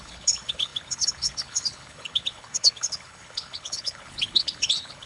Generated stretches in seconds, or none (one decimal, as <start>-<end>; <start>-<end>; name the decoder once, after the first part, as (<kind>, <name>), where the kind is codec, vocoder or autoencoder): 0.0-5.1 (codec, HILCodec)

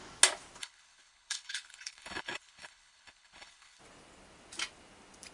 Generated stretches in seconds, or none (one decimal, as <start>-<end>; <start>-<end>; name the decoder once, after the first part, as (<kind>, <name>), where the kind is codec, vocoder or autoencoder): 0.6-3.8 (codec, HILCodec)

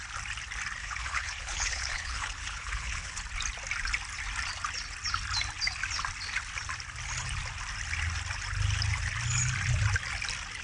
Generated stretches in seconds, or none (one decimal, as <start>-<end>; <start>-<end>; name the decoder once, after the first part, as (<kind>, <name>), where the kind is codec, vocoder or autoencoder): 0.8-3.2 (codec, HILCodec)

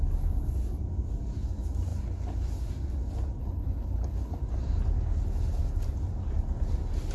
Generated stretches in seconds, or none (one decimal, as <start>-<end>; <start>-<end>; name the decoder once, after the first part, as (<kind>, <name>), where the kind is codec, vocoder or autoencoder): 3.4-4.4 (codec, HILCodec)

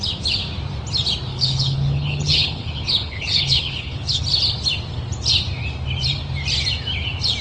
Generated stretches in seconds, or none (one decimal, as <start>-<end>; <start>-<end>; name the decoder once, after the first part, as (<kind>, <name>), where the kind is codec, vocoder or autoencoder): 1.3-4.2 (codec, HILCodec)

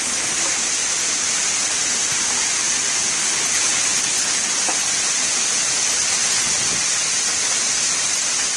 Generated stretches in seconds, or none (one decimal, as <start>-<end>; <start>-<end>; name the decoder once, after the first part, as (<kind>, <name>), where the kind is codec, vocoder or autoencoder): 3.2-4.5 (codec, HILCodec)

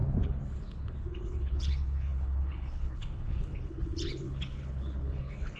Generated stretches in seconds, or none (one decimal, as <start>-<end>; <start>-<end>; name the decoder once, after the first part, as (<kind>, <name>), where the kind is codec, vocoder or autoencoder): 0.0-5.6 (codec, HILCodec)